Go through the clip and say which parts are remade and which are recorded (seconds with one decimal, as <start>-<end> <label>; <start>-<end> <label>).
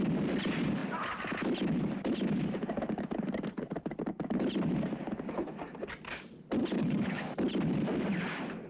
0.0-6.6 recorded; 6.6-7.2 remade; 7.2-8.7 recorded